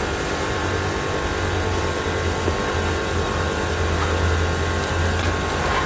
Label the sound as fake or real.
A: real